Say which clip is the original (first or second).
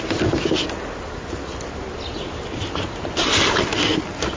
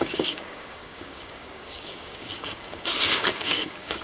first